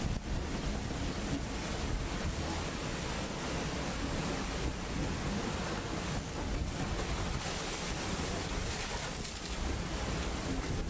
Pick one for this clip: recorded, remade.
recorded